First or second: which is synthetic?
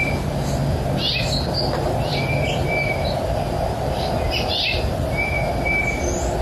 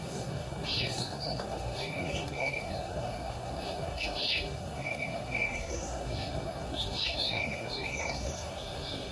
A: second